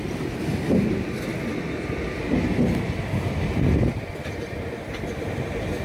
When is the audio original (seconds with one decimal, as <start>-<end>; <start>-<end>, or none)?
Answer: 1.3-4.8